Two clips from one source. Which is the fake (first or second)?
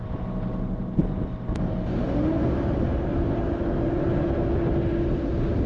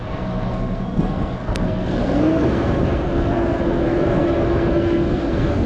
second